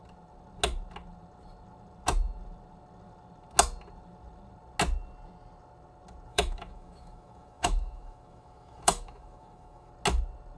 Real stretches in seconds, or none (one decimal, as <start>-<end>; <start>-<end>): 0.0-6.3; 9.9-10.6